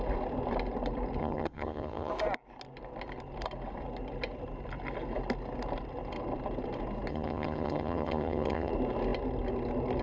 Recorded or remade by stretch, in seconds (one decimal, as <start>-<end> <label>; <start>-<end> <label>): 0.0-1.2 recorded; 1.2-2.1 remade; 2.1-7.1 recorded; 7.1-8.7 remade; 8.7-10.0 recorded